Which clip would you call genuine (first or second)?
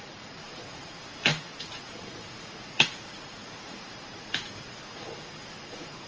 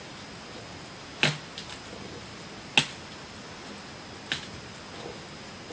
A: second